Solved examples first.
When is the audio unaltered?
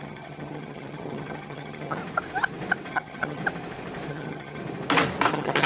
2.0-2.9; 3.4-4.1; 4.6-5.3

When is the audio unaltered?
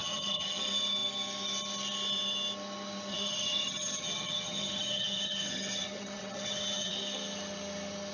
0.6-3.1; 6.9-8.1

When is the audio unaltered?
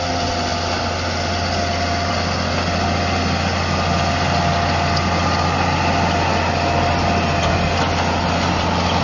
0.0-9.0